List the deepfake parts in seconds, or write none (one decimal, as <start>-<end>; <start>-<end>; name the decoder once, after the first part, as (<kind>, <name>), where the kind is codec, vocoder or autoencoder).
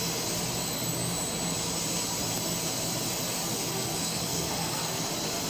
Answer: 3.7-5.1 (codec, SNAC)